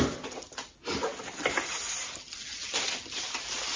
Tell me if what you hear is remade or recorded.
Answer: recorded